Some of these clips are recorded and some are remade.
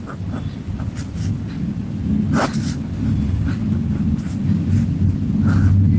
recorded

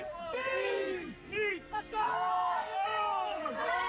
remade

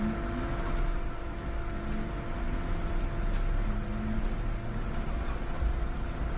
recorded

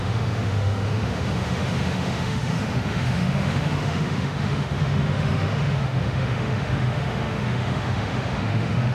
remade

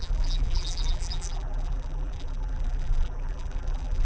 remade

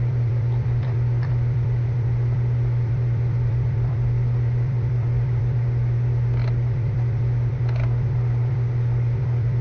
remade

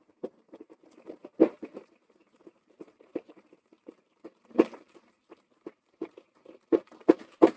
remade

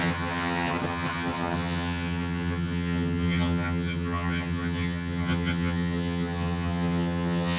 remade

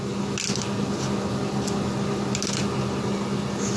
recorded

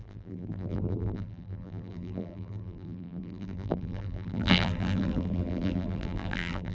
remade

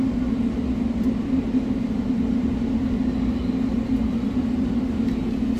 recorded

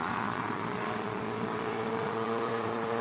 remade